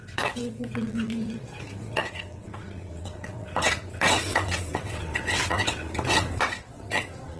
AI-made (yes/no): yes